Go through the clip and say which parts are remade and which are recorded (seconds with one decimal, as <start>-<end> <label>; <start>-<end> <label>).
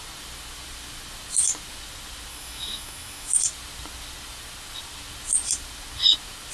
0.0-2.3 recorded; 2.3-3.4 remade; 3.4-6.5 recorded